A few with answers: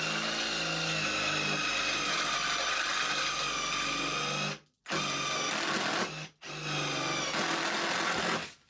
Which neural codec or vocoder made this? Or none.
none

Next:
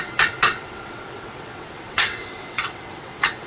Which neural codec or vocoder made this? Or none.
vocoder, WaveNeXt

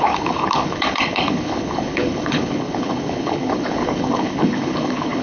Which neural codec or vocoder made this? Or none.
codec, HILCodec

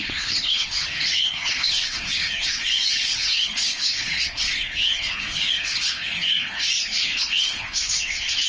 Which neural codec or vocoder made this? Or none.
codec, HILCodec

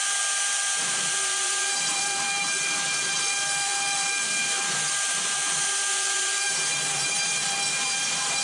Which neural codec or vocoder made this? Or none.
vocoder, BigVGAN v2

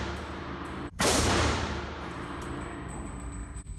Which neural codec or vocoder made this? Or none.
vocoder, BigVGAN v2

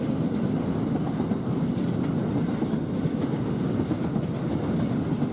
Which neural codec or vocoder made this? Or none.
none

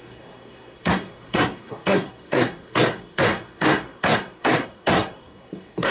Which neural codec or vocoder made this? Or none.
codec, SNAC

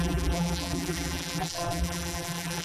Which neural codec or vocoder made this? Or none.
vocoder, BigVGAN v2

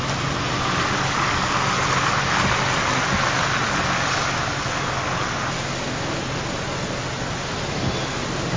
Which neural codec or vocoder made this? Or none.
none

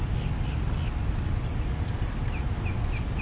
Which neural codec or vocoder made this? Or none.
none